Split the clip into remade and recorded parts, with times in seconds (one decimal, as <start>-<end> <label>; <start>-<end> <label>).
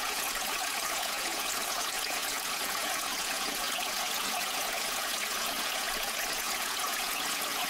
0.0-7.7 remade